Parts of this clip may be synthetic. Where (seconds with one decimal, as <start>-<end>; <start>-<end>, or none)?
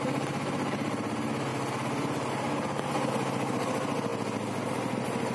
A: none